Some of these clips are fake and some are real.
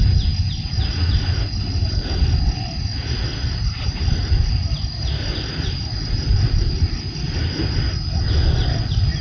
real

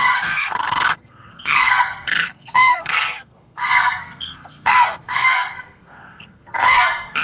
fake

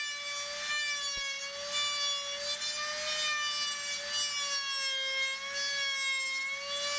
real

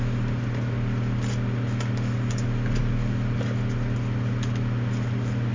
real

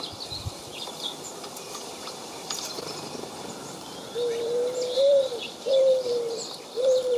fake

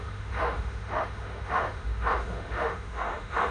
fake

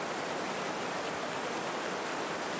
real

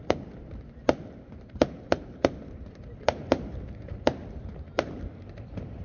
fake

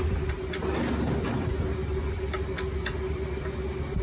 real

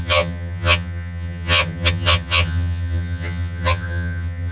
fake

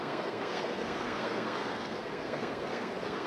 fake